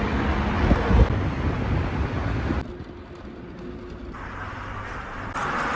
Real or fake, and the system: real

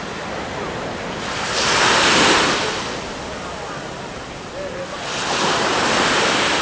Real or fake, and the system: real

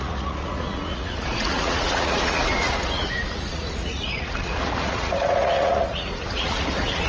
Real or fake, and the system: fake, vocoder, Vocos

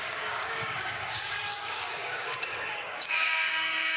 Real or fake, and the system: fake, codec, DAC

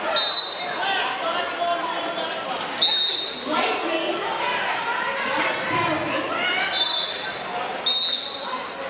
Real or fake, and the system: real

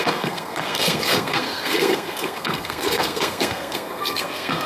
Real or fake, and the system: fake, codec, SNAC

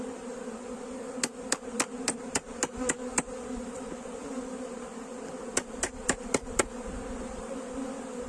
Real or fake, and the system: real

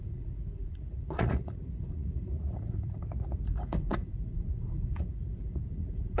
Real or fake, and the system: fake, vocoder, Vocos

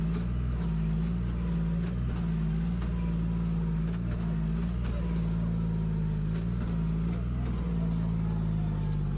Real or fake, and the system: real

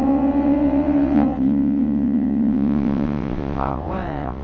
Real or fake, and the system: fake, vocoder, WaveNeXt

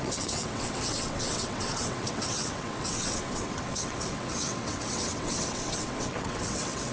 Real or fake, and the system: fake, vocoder, WaveNeXt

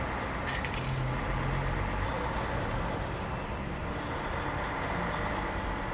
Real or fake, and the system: real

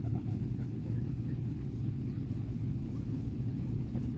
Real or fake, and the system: fake, codec, HILCodec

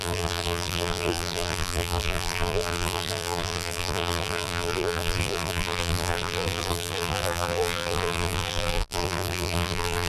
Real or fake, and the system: fake, vocoder, BigVGAN v2